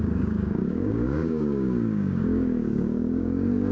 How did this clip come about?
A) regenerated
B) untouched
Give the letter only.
A